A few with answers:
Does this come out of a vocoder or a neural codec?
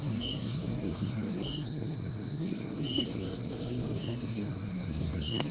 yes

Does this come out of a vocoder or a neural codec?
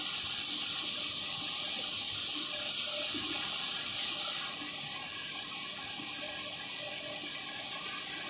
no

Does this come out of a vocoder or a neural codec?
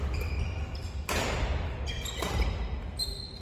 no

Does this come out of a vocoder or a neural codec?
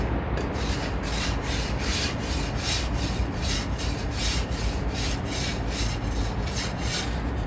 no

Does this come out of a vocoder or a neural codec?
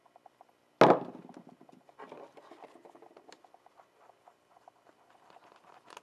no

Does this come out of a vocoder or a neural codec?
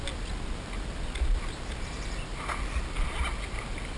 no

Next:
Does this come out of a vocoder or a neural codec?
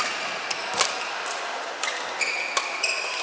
no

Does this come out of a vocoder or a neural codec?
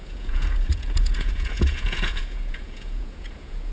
yes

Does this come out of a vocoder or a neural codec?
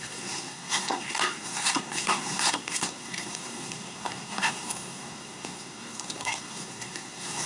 yes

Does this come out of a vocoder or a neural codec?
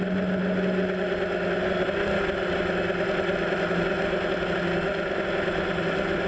no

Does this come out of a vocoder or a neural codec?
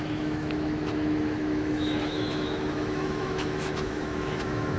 yes